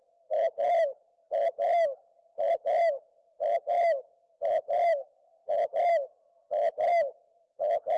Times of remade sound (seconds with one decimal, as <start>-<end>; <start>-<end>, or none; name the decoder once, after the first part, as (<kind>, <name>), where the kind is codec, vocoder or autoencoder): none